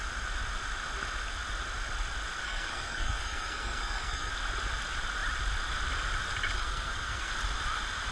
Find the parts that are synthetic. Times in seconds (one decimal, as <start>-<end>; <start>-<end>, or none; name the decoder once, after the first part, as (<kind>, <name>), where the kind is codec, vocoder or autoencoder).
2.4-4.3 (codec, SNAC); 6.6-7.3